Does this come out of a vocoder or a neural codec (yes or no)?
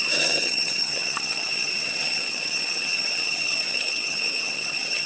yes